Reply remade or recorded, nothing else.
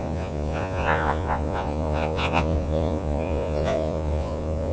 remade